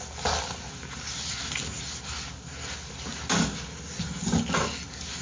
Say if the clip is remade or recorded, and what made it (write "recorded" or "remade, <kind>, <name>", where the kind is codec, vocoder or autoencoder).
recorded